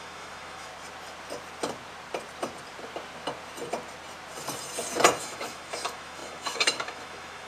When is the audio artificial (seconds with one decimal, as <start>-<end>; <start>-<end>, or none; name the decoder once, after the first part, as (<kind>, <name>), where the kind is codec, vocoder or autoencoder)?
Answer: 0.0-0.7 (autoencoder, DAC-VAE); 5.2-7.5